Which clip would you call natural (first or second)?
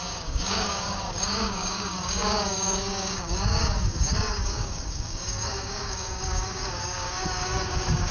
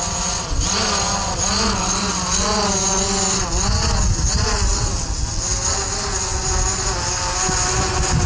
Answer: second